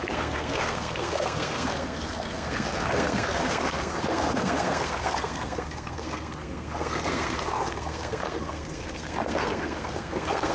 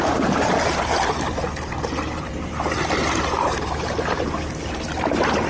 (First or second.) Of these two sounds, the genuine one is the second